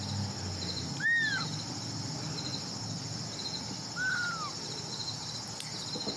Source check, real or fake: real